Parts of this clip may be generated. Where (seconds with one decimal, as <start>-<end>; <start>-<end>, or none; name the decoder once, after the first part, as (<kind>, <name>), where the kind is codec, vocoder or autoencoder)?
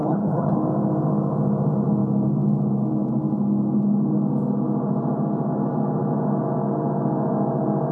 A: 0.0-0.6 (codec, HILCodec)